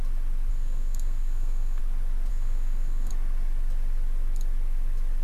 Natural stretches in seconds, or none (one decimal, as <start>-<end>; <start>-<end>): 0.0-0.5; 1.8-2.3; 3.1-5.2